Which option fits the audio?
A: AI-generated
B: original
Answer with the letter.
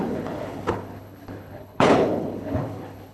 A